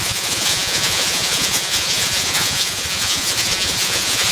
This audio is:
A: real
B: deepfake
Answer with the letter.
B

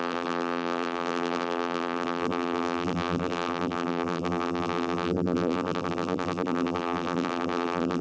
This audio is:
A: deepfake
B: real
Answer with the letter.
A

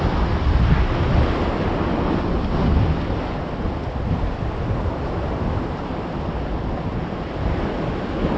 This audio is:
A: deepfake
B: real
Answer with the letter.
B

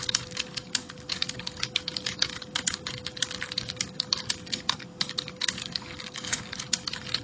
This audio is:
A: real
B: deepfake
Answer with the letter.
B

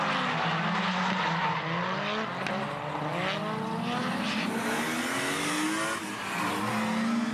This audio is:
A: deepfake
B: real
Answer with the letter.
B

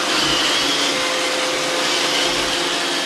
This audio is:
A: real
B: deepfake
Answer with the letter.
A